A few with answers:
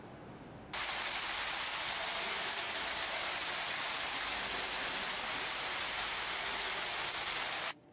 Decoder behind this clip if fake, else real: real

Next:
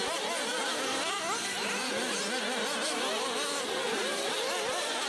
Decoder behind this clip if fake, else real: real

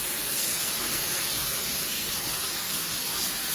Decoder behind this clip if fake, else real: fake, codec, SNAC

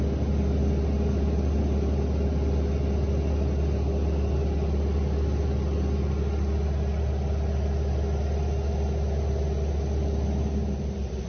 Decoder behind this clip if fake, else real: real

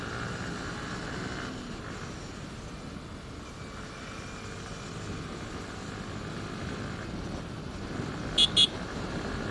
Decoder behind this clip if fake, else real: real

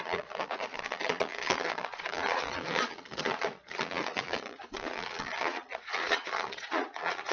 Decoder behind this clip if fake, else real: fake, vocoder, Vocos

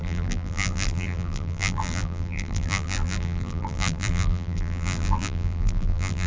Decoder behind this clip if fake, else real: fake, vocoder, BigVGAN v2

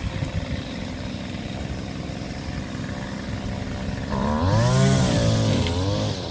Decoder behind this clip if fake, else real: real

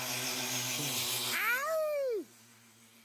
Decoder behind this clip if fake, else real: real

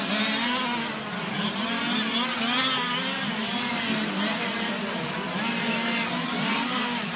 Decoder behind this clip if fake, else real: real